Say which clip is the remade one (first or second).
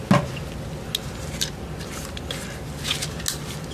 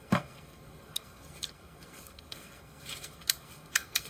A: second